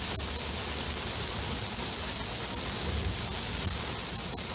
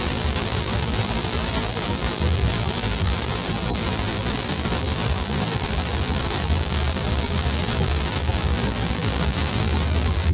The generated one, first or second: second